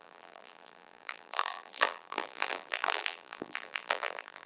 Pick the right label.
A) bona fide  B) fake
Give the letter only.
B